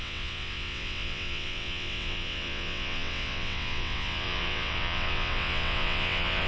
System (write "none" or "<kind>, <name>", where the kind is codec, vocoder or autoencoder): vocoder, WaveNeXt